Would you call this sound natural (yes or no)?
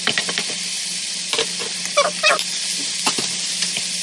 yes